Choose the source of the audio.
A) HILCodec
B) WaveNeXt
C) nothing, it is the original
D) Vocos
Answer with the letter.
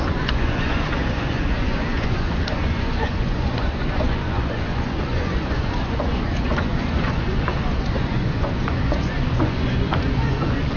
D